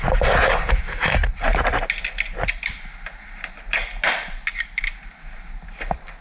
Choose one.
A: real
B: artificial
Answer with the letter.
A